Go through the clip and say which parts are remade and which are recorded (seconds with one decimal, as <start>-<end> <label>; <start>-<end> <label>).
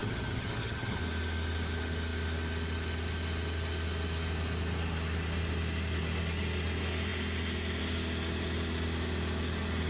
0.0-1.0 remade; 1.0-9.9 recorded